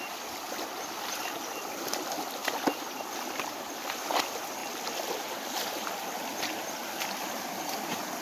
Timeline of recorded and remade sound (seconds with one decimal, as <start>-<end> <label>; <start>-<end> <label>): 0.0-4.6 remade; 4.6-8.2 recorded